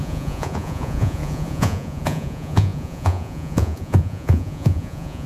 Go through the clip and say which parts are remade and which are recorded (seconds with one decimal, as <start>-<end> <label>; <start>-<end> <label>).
0.0-5.3 remade